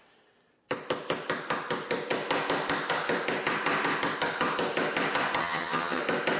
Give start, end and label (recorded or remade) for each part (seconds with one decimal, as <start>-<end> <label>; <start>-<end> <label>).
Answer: 0.0-5.4 recorded; 5.4-6.0 remade; 6.0-6.4 recorded